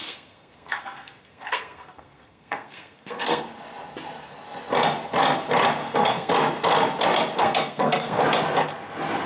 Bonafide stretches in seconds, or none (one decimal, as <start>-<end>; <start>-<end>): 3.4-5.8; 6.3-7.4; 8.2-9.3